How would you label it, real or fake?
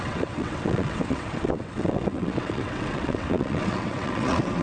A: fake